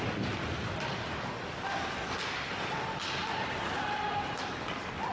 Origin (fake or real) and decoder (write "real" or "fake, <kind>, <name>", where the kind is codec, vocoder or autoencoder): real